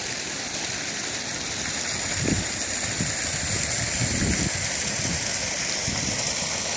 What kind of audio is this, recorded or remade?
recorded